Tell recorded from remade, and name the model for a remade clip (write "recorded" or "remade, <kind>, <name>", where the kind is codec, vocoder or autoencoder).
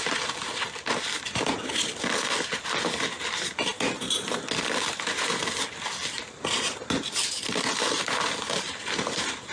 recorded